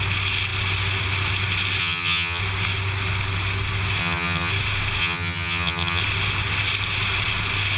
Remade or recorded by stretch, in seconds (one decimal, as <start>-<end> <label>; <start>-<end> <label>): 0.0-1.8 recorded; 1.8-2.4 remade; 2.4-4.0 recorded; 4.0-4.5 remade; 4.5-5.0 recorded; 5.0-6.0 remade; 6.0-7.8 recorded